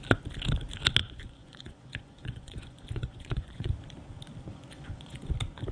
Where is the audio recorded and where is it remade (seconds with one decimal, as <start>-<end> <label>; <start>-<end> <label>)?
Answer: 0.0-1.0 recorded; 1.0-3.7 remade; 3.7-4.5 recorded; 4.5-5.3 remade; 5.3-5.7 recorded